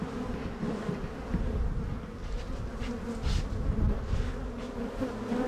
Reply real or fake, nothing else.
real